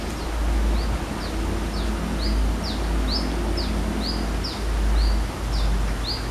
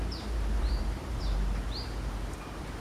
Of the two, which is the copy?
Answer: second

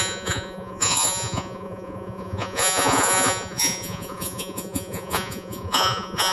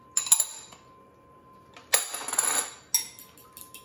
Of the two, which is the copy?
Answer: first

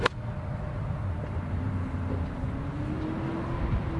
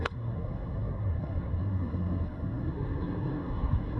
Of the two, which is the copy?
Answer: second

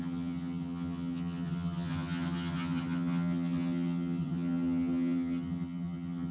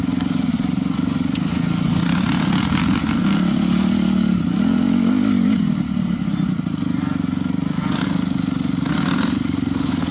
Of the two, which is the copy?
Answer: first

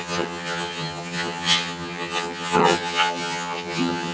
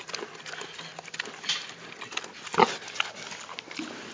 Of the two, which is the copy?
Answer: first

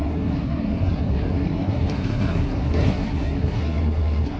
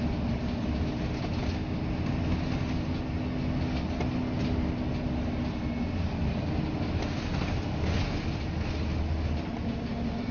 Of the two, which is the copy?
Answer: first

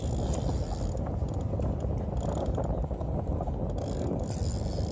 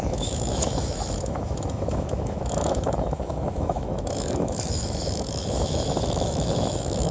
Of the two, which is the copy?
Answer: second